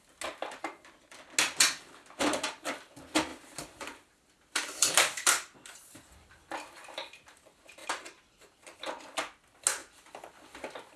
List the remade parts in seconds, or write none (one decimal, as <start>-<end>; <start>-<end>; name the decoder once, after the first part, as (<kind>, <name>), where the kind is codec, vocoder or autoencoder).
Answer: 3.3-6.3 (vocoder, BigVGAN v2); 7.8-9.0